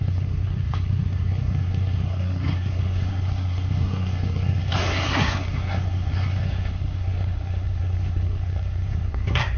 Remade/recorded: remade